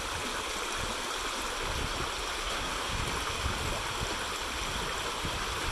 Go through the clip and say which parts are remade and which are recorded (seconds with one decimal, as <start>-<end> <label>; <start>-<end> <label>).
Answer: 0.0-2.4 recorded; 2.4-3.0 remade; 3.0-5.7 recorded